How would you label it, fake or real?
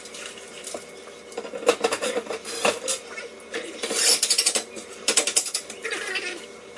fake